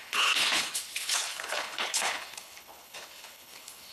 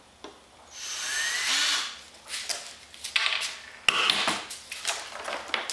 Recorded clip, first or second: second